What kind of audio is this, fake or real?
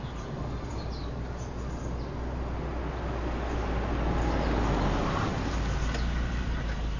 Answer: real